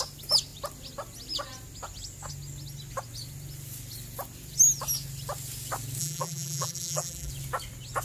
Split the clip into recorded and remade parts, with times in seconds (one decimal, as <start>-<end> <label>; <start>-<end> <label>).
0.0-6.0 recorded; 6.0-7.3 remade; 7.3-8.0 recorded